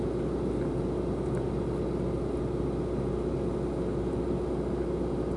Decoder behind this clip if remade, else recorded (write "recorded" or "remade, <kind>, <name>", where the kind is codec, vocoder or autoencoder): recorded